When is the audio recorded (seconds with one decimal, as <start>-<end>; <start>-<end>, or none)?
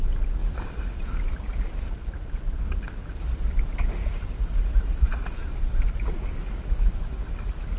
0.0-3.0; 4.2-7.8